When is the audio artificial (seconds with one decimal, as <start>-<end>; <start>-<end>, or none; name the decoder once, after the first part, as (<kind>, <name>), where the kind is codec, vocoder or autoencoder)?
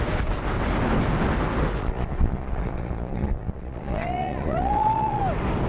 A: 1.8-5.2 (vocoder, Vocos)